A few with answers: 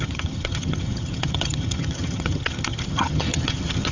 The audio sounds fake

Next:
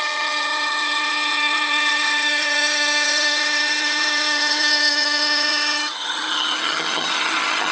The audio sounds fake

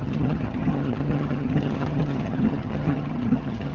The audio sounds fake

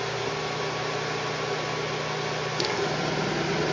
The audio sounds real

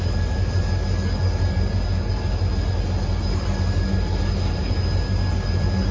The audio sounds real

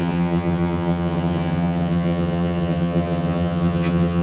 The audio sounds fake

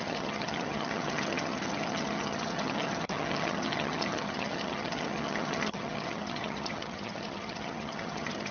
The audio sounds fake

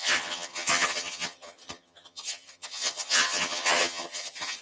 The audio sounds fake